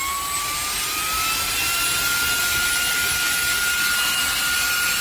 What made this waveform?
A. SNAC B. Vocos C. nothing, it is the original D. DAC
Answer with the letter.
C